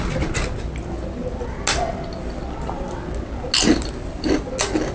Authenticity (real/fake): real